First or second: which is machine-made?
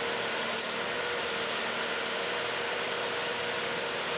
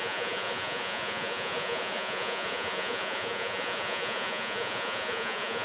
second